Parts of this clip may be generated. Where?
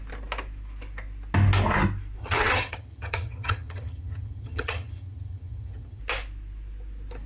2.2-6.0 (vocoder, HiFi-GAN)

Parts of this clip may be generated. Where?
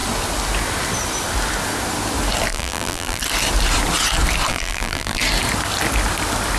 2.5-3.2 (vocoder, BigVGAN v2); 4.5-5.2